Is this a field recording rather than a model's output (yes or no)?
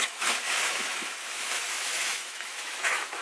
no